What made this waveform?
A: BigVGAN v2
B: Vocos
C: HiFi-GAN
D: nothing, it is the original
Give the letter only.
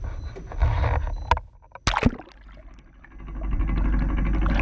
D